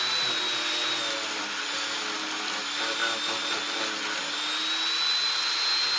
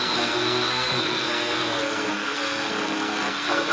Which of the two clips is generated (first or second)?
second